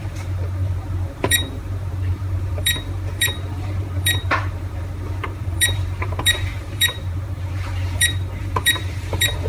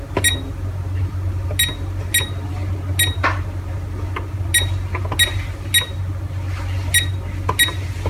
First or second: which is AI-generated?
first